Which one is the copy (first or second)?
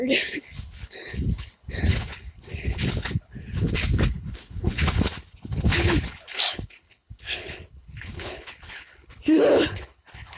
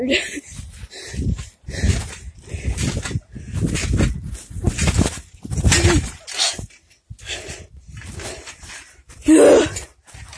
first